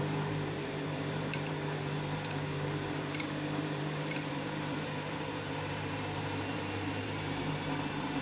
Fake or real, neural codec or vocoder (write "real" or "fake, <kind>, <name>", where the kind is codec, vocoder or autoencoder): fake, vocoder, BigVGAN v2